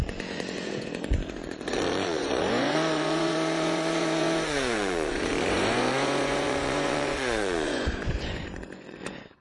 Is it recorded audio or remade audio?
remade